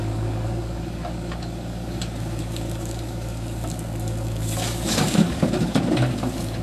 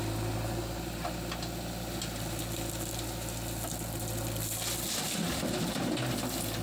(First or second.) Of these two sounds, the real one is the second